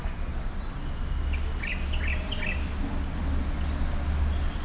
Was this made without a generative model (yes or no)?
yes